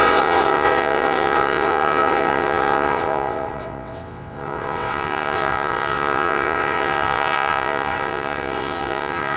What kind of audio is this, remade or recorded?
remade